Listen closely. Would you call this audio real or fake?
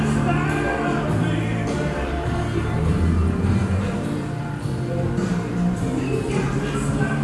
fake